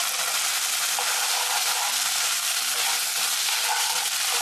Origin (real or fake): real